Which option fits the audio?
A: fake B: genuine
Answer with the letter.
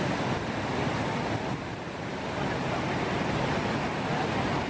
B